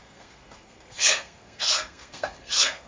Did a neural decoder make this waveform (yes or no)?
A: yes